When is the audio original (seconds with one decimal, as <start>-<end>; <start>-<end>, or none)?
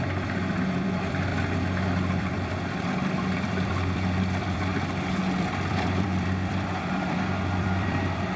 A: 1.3-2.2; 4.7-5.4